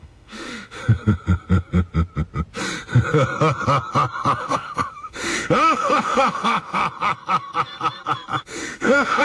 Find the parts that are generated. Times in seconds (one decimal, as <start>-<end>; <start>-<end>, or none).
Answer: 0.0-0.8; 4.4-6.8; 8.4-9.2

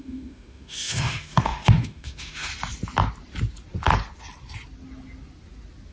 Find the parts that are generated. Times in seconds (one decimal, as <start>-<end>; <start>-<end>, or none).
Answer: 0.0-2.5

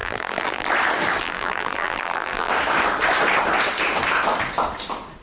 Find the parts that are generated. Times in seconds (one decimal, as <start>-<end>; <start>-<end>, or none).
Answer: 0.0-0.7; 1.2-2.5

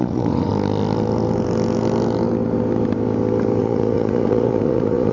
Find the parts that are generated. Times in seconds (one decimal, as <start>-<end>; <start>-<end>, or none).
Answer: 0.0-0.5; 3.6-5.1

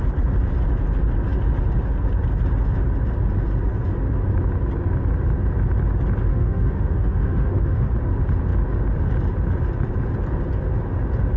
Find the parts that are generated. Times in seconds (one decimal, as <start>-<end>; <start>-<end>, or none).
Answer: 6.3-7.9

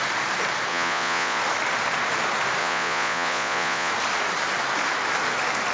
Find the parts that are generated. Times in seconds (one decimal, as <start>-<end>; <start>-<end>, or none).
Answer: 0.7-1.4; 2.6-3.9

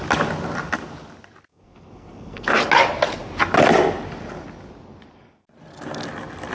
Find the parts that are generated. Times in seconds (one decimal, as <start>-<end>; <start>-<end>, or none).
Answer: 1.5-2.6

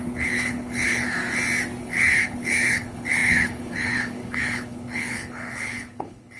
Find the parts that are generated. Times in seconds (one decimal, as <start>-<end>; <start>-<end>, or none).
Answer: 0.0-1.2; 1.8-6.4